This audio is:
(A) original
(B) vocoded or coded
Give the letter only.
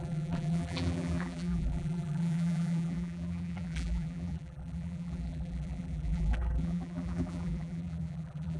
B